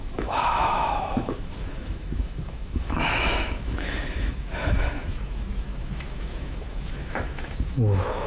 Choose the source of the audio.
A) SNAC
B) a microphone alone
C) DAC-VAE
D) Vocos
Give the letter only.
C